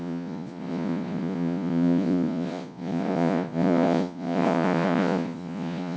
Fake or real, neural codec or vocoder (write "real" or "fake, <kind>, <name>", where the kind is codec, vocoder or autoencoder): fake, vocoder, Vocos